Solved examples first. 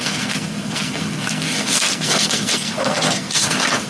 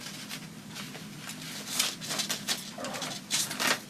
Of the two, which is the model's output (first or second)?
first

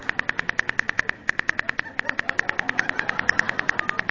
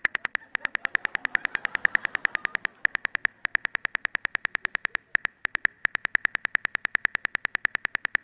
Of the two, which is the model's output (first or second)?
second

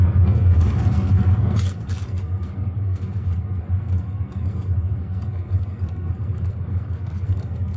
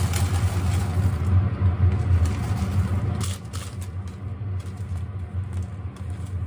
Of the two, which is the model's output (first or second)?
first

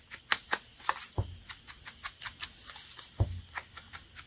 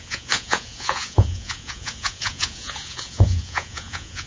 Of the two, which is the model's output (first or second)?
second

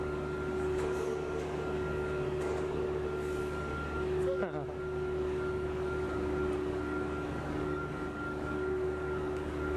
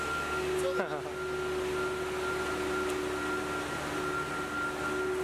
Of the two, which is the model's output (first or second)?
first